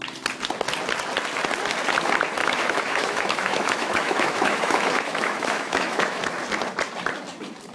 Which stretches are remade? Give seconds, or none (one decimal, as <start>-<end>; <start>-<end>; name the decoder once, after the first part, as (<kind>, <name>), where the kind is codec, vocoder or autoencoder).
2.4-6.2 (autoencoder, DAC-VAE)